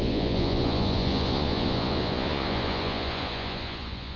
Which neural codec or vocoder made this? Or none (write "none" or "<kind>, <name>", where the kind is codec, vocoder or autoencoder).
vocoder, Vocos